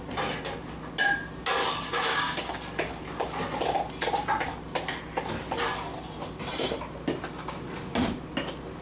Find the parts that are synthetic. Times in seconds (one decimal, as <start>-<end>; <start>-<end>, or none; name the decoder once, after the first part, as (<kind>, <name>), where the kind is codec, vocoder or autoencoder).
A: 1.6-2.5 (codec, DAC)